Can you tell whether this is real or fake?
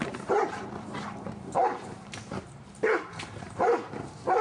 fake